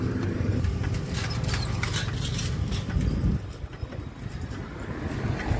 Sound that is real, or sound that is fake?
real